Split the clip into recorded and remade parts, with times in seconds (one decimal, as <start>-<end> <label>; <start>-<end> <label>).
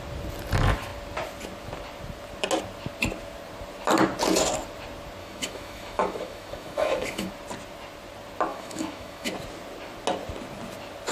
0.0-5.2 recorded; 5.2-7.3 remade; 7.3-8.5 recorded; 8.5-9.3 remade; 9.3-11.1 recorded